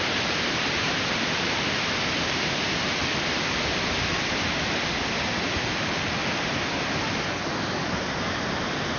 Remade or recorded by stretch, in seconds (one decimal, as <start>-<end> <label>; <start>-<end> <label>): 0.0-3.0 remade; 3.0-5.7 recorded; 5.7-6.2 remade; 6.2-9.0 recorded